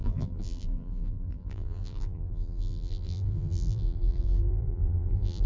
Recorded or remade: remade